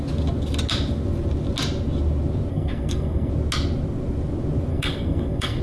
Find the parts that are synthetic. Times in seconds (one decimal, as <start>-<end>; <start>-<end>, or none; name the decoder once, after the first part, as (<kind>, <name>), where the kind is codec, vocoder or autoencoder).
2.5-3.3 (codec, SNAC); 4.7-5.6